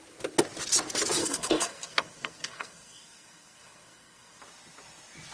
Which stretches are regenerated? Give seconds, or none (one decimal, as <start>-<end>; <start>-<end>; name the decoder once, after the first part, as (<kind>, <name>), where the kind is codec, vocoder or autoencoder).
1.2-4.4 (codec, SNAC)